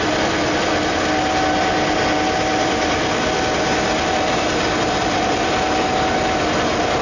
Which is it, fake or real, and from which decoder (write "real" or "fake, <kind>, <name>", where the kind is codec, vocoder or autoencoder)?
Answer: real